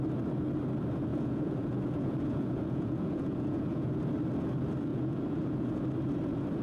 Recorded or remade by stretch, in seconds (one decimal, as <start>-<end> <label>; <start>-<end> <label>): 0.0-1.1 recorded; 1.1-4.0 remade; 4.0-4.9 recorded; 4.9-5.8 remade; 5.8-6.6 recorded